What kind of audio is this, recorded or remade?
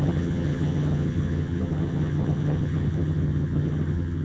remade